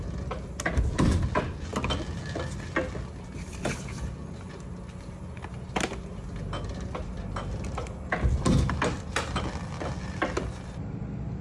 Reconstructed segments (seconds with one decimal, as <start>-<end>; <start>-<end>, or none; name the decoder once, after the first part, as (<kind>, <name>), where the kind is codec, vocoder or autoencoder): none

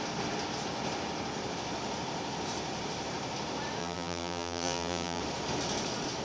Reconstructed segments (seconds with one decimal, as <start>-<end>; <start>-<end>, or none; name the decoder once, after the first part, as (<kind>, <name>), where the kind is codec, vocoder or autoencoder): 3.8-5.2 (vocoder, BigVGAN v2)